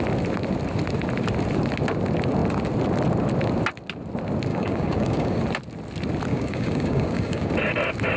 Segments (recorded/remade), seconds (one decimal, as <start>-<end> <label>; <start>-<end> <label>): 0.0-4.5 recorded; 4.5-5.4 remade; 5.4-6.3 recorded; 6.3-7.5 remade; 7.5-8.2 recorded